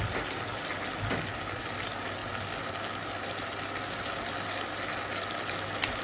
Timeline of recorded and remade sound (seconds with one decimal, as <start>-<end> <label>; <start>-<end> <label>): 0.0-6.0 recorded